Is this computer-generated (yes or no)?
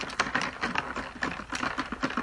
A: no